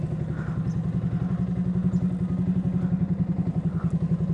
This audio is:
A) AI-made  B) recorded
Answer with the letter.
B